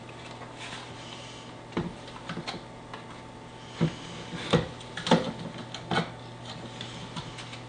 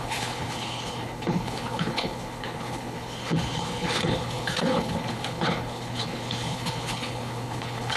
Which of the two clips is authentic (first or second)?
first